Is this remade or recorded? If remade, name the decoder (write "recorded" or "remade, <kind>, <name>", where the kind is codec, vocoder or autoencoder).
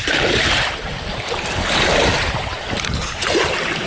remade, vocoder, BigVGAN v2